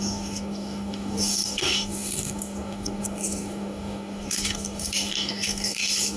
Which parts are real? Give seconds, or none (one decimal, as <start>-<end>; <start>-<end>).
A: none